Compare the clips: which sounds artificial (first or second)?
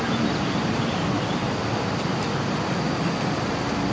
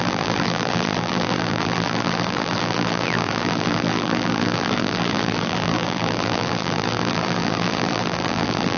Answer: second